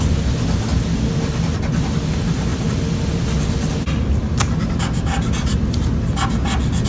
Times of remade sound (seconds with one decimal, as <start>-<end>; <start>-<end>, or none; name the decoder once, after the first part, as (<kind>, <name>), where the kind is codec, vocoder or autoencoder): none